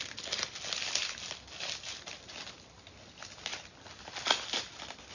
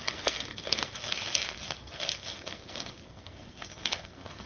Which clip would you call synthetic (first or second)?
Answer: second